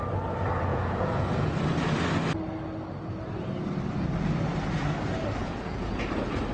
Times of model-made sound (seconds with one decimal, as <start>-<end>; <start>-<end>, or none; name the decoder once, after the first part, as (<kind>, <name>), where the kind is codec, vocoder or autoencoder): 0.7-1.5 (vocoder, Vocos); 5.4-6.1